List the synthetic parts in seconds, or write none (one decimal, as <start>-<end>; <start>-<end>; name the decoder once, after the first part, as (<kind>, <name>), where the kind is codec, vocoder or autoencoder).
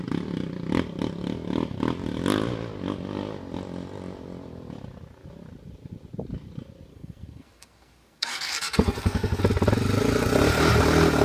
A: 6.9-9.4 (codec, SNAC)